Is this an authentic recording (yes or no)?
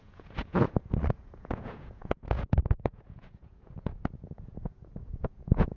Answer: no